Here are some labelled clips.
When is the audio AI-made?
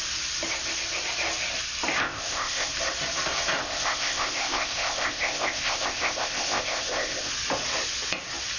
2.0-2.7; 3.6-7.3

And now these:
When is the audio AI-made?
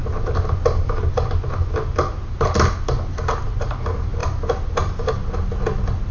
none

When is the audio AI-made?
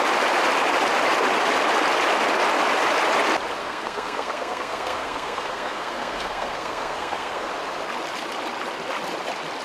3.6-7.5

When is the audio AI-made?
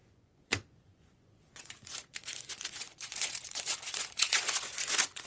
0.0-5.3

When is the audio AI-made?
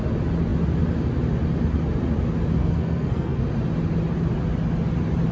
2.6-3.4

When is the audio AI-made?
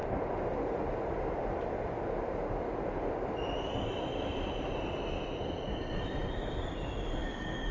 none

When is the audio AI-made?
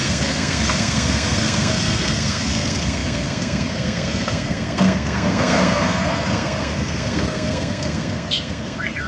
0.0-9.1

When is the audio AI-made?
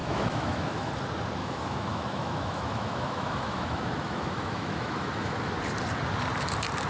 0.0-0.9; 1.4-5.5